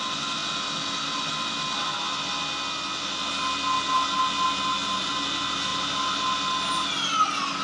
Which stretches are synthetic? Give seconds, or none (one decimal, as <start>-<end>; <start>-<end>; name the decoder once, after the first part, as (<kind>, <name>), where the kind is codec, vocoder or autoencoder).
none